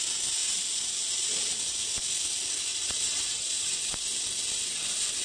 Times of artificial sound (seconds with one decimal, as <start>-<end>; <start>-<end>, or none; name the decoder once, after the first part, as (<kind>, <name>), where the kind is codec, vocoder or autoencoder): 2.7-3.8 (vocoder, WaveNeXt)